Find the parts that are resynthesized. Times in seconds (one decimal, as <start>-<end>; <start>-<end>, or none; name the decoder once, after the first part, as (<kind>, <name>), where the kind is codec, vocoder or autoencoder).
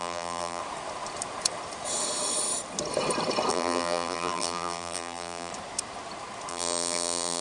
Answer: 0.0-0.6 (vocoder, BigVGAN v2); 3.5-5.5; 6.5-7.4